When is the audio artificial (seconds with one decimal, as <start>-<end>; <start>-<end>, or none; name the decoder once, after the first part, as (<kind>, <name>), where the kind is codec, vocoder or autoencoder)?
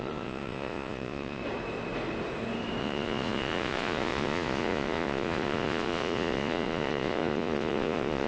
0.0-1.4 (vocoder, Vocos); 2.8-8.3